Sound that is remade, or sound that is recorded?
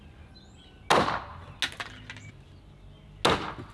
recorded